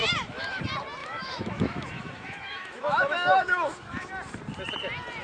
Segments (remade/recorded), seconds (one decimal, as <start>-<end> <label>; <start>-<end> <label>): 0.0-0.6 remade; 0.6-1.0 recorded; 1.0-4.1 remade; 4.1-5.2 recorded